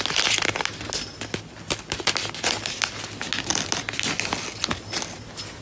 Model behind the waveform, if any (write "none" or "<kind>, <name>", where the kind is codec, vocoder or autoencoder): none